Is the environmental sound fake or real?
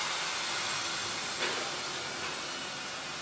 real